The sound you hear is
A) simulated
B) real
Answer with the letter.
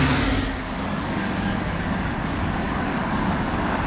A